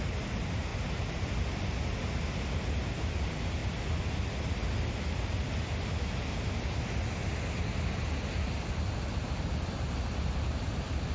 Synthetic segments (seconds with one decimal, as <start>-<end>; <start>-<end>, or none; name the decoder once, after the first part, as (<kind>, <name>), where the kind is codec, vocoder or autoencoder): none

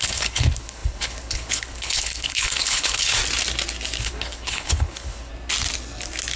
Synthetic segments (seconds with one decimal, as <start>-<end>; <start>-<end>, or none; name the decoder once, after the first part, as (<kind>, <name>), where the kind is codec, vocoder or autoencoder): 0.0-3.2 (codec, HILCodec); 4.0-5.3

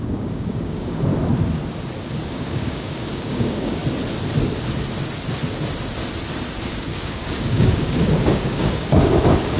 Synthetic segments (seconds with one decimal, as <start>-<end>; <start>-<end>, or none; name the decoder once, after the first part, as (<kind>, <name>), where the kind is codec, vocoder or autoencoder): 0.0-1.1 (codec, DAC); 2.3-3.8; 6.7-9.6